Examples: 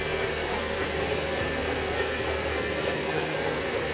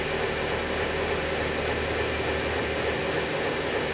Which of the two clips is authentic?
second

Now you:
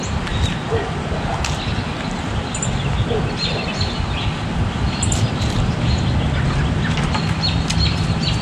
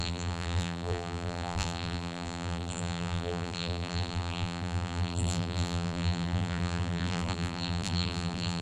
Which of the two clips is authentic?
first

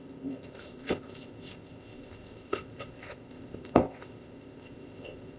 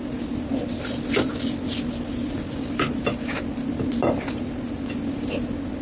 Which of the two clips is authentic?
second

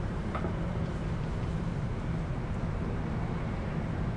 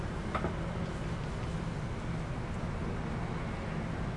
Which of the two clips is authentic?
second